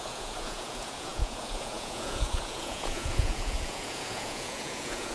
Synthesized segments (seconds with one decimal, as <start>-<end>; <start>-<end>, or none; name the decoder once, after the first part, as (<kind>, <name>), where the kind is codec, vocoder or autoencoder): 0.0-5.1 (vocoder, Vocos)